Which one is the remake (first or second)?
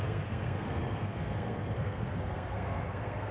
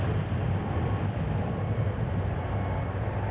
first